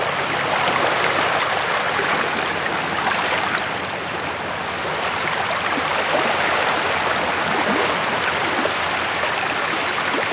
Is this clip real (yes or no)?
yes